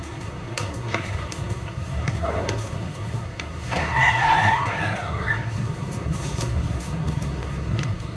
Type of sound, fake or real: fake